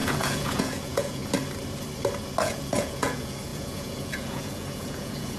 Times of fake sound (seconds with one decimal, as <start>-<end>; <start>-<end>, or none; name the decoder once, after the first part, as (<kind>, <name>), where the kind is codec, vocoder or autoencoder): 0.0-1.2 (vocoder, Vocos); 2.4-5.4